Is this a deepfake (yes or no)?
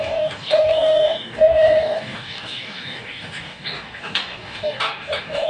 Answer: yes